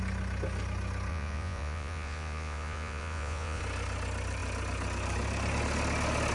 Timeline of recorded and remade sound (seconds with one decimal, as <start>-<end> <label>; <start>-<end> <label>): 0.0-1.1 recorded; 1.1-3.6 remade; 3.6-6.3 recorded